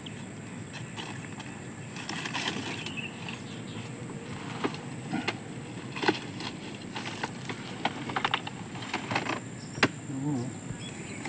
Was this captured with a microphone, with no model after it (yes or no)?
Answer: yes